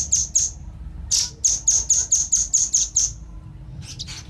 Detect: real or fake real